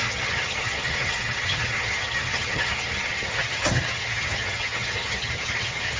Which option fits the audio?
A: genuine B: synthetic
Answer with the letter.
B